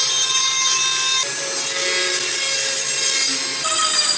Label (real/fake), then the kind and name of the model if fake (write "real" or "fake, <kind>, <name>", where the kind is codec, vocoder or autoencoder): real